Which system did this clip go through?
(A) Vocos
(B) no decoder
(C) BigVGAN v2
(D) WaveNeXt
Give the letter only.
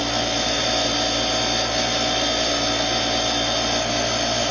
B